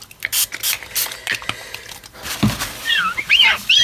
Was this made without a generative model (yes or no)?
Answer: yes